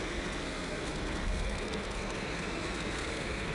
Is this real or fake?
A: fake